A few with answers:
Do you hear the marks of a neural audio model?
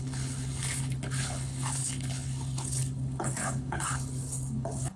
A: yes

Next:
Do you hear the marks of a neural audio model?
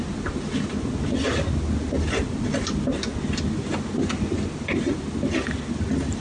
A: no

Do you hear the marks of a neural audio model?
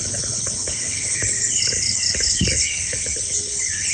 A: yes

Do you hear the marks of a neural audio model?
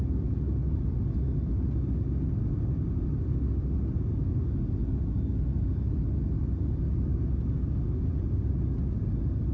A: no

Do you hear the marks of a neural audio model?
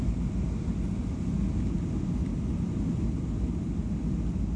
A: no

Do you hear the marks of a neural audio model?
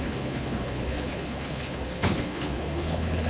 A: yes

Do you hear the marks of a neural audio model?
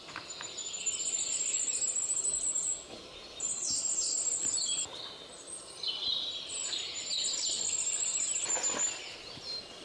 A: no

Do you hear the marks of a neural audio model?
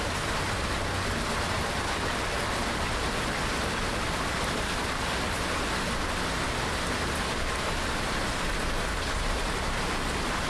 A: no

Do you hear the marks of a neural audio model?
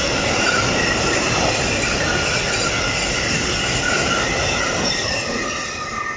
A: no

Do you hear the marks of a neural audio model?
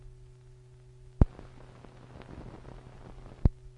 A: no